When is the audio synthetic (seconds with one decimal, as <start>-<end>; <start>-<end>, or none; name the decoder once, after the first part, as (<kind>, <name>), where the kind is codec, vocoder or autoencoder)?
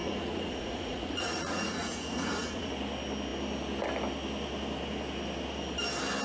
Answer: 0.0-2.7 (vocoder, Vocos)